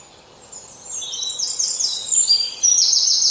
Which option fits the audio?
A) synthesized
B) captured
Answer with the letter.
A